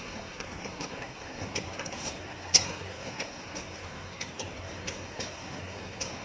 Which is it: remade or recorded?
remade